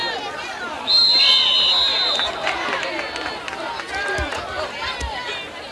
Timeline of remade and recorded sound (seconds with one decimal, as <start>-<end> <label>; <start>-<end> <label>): 0.0-1.9 recorded; 1.9-5.3 remade; 5.3-5.7 recorded

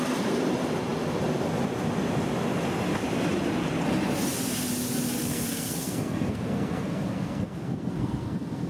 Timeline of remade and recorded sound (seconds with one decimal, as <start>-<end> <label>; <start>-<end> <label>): 0.0-5.2 recorded; 5.2-8.7 remade